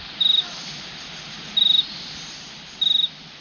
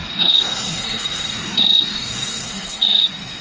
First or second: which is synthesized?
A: second